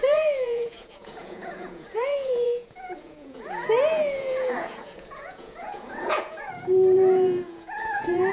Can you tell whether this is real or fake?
fake